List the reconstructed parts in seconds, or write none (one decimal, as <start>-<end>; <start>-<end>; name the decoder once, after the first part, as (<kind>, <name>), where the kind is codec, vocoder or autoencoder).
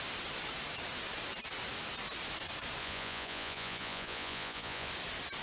2.8-4.9 (vocoder, Vocos)